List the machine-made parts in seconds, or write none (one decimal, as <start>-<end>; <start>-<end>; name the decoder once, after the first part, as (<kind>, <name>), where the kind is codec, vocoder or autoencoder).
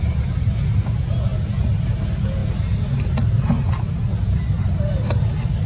none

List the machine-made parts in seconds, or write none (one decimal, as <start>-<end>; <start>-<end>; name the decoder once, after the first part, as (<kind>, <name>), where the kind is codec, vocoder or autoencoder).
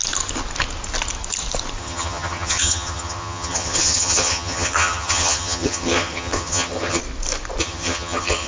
1.8-7.0 (vocoder, HiFi-GAN); 7.6-8.5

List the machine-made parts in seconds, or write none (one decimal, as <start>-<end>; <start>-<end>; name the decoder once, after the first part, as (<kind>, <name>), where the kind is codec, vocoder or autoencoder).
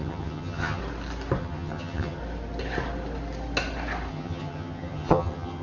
0.0-0.8 (vocoder, HiFi-GAN); 1.4-2.2; 4.1-5.6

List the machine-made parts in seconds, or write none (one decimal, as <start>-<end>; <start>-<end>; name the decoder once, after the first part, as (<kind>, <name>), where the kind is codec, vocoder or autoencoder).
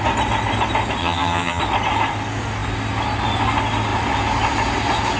1.0-1.6 (vocoder, HiFi-GAN)